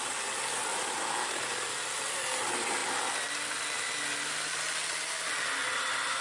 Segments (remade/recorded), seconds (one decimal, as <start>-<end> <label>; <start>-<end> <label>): 0.0-6.2 recorded

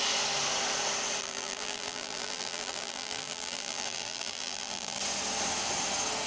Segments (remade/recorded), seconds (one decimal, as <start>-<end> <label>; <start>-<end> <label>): 0.0-1.2 recorded; 1.2-5.0 remade; 5.0-6.3 recorded